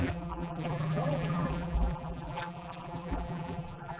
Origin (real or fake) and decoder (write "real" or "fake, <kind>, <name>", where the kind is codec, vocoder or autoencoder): fake, vocoder, BigVGAN v2